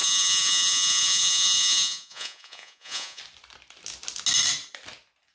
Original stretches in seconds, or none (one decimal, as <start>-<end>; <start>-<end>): 3.2-5.3

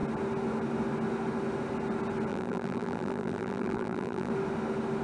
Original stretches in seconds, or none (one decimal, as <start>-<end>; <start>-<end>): 0.0-2.3; 4.3-5.0

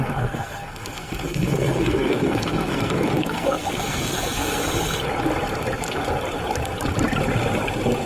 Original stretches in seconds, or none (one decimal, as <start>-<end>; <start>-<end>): 4.6-8.1

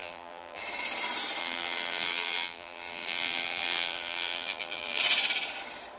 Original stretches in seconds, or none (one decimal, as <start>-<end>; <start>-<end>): 0.6-1.4; 5.0-6.0